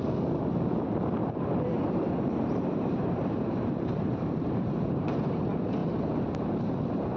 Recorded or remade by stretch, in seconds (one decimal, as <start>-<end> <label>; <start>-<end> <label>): 0.0-1.2 recorded; 1.2-5.3 remade; 5.3-5.8 recorded; 5.8-6.3 remade; 6.3-7.2 recorded